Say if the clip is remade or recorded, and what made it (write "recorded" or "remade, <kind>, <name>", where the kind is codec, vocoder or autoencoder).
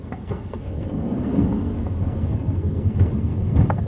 remade, codec, SNAC